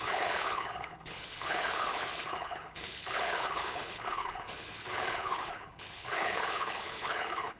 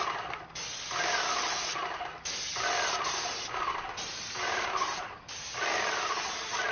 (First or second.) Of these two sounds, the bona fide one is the second